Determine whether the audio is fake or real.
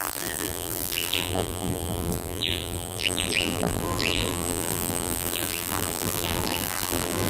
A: fake